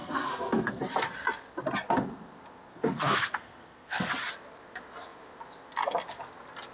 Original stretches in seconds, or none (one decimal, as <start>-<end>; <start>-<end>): 0.8-2.7; 4.1-6.7